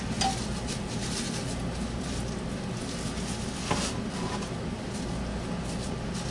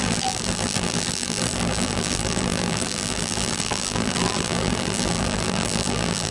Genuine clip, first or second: first